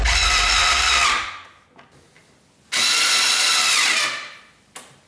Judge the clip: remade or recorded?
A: recorded